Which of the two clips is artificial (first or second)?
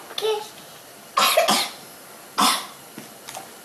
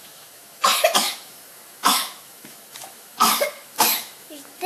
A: second